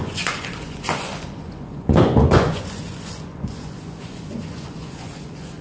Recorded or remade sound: remade